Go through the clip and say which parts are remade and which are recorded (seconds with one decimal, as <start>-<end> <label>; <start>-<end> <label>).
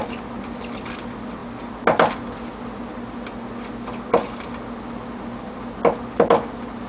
0.0-6.9 recorded